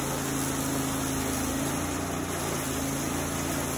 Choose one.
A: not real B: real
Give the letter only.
B